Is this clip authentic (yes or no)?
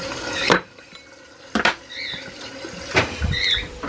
yes